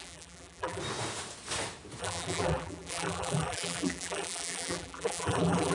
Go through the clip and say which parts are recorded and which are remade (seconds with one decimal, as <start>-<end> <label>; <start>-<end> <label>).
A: 0.0-0.8 remade; 0.8-2.0 recorded; 2.0-5.7 remade